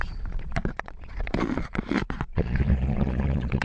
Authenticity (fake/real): fake